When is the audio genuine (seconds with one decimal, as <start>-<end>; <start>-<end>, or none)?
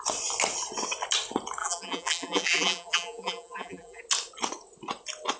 0.0-1.6; 4.0-5.4